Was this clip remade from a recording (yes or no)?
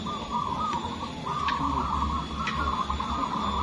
no